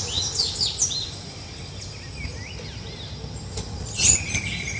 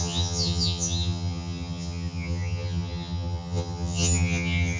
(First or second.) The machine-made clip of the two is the second